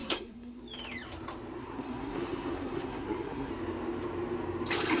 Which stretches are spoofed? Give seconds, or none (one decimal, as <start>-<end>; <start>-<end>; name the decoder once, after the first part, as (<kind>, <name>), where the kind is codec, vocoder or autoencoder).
0.0-0.6 (codec, SNAC); 1.6-3.5